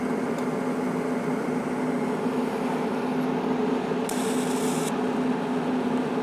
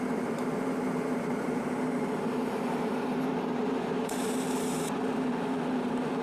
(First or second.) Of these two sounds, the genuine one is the first